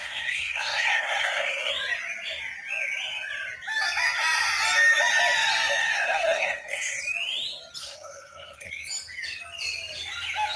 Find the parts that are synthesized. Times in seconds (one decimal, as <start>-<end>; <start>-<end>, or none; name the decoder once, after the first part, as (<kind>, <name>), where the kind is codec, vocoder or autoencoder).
0.0-1.7 (codec, SNAC); 5.8-7.0; 7.8-8.7